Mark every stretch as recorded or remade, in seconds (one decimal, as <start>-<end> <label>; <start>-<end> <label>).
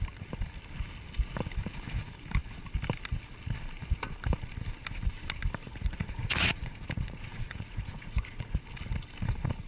0.0-5.6 recorded; 5.6-8.6 remade; 8.6-9.7 recorded